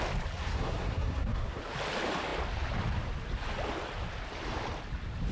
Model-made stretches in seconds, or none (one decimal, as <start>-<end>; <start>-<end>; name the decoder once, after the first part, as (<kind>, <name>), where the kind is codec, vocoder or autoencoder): 0.5-1.6 (codec, SNAC)